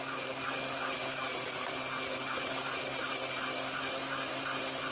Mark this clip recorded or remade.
recorded